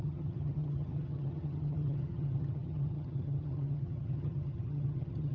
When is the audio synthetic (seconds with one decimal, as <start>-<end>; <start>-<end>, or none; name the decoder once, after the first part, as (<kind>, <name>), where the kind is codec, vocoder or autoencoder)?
0.0-5.3 (vocoder, HiFi-GAN)